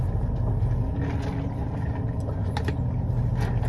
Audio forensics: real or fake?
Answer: real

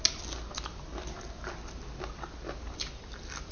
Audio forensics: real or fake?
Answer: real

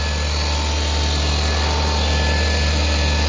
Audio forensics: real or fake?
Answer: real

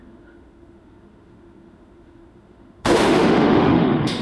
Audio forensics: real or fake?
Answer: fake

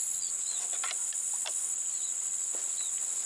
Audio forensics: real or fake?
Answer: real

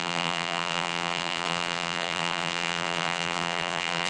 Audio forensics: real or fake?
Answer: fake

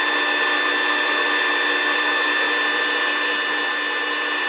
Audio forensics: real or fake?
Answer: real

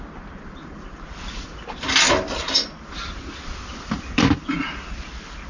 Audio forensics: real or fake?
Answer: real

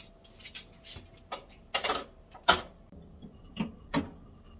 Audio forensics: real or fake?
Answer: real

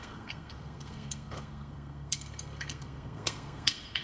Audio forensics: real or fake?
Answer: fake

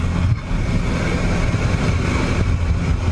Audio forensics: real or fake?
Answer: real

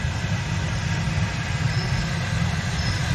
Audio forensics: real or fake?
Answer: real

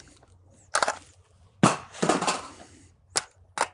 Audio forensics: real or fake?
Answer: real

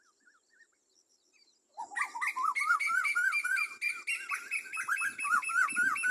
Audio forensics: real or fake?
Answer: real